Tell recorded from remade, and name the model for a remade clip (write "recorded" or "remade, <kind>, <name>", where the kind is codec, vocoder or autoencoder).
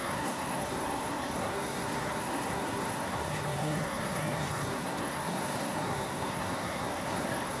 remade, codec, SNAC